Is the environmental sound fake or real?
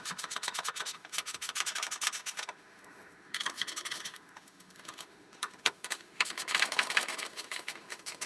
fake